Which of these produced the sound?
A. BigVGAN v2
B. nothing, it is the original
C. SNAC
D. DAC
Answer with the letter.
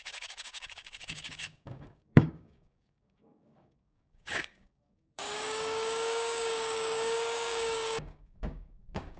D